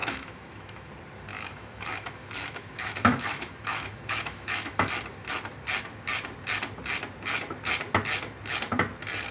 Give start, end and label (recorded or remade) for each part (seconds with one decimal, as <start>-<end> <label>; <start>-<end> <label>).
0.0-0.9 remade; 0.9-1.3 recorded; 1.3-4.9 remade; 4.9-9.3 recorded